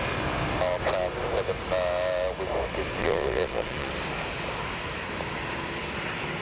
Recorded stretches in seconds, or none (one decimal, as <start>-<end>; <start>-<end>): 0.0-3.0; 3.9-6.4